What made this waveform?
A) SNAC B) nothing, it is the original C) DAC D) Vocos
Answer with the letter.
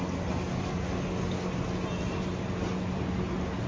B